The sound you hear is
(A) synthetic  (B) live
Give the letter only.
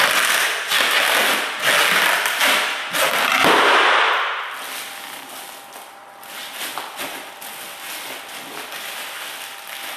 B